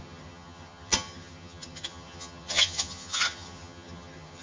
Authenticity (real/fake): fake